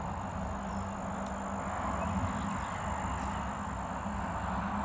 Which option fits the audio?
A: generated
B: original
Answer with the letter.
B